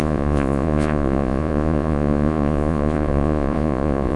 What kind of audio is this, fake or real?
fake